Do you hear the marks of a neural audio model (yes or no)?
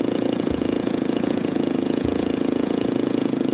yes